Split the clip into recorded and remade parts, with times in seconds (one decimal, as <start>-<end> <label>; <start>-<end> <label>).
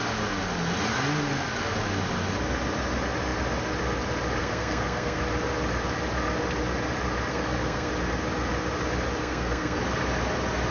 0.0-4.4 recorded; 4.4-5.2 remade; 5.2-7.3 recorded; 7.3-7.9 remade; 7.9-9.2 recorded; 9.2-9.8 remade; 9.8-10.7 recorded